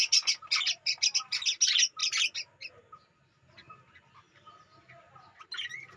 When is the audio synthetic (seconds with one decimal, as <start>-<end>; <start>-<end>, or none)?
none